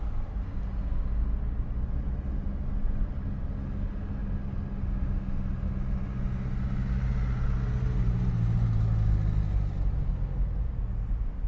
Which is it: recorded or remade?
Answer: recorded